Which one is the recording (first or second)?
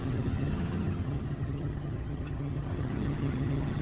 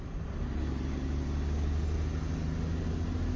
second